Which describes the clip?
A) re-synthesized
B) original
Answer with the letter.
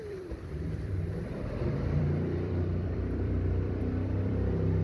A